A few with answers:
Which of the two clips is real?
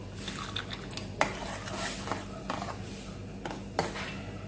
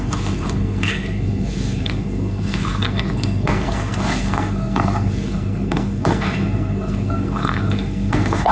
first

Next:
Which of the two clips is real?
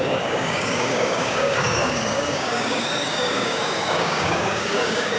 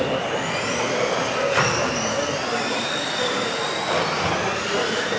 second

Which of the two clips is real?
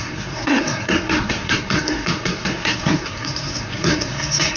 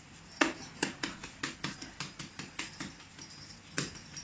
second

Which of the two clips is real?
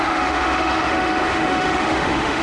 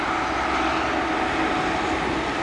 second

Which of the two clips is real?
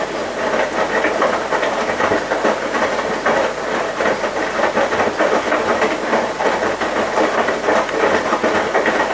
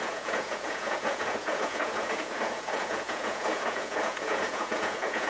first